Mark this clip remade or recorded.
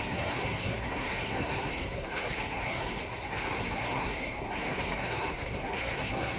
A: remade